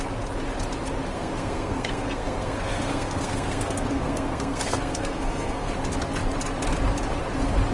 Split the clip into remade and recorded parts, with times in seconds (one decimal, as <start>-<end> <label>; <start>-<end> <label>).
0.0-1.1 recorded; 1.1-5.7 remade; 5.7-7.7 recorded